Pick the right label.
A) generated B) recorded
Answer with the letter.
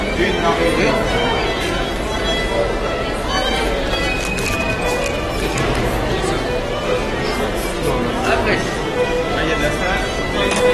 B